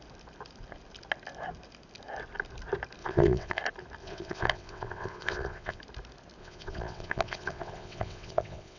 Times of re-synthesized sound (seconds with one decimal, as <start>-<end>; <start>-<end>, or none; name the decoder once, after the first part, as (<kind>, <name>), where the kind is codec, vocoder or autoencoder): 3.0-3.6 (vocoder, WaveNeXt); 4.0-5.8; 6.4-8.8